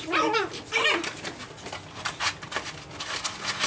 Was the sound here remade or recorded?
recorded